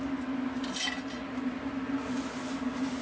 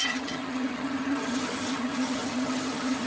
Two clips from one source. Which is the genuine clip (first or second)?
first